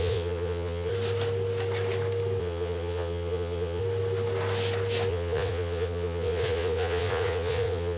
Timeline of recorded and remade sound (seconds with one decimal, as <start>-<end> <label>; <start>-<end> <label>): 0.0-0.9 remade; 0.9-2.4 recorded; 2.4-3.8 remade; 3.8-5.1 recorded; 5.1-8.0 remade